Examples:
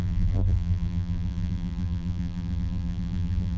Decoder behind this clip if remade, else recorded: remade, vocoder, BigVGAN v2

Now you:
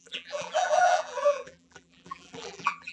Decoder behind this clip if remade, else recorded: remade, vocoder, BigVGAN v2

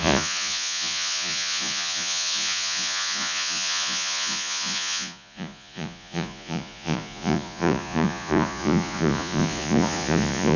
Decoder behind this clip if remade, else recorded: remade, vocoder, Vocos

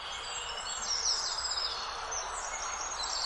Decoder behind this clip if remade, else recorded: recorded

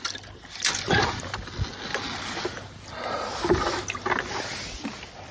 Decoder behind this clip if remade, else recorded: recorded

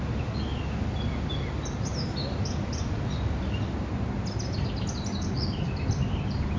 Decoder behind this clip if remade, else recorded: recorded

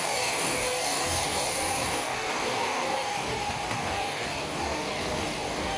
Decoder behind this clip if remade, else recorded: remade, codec, DAC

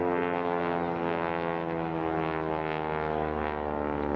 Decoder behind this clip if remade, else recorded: recorded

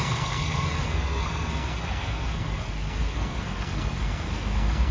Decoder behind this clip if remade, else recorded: remade, codec, SNAC